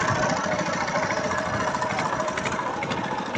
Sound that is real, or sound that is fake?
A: fake